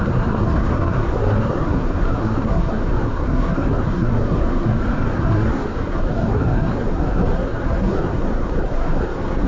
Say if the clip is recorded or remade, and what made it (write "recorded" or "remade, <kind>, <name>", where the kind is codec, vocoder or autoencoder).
remade, codec, SNAC